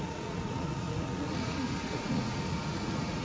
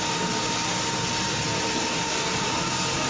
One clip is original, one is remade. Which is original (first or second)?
second